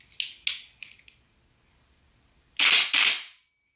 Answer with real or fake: real